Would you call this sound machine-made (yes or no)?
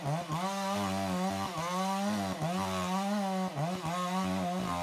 no